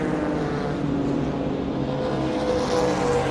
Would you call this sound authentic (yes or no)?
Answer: yes